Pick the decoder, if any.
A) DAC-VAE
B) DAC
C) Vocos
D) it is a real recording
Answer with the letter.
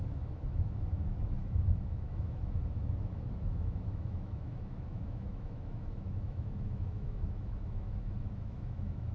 A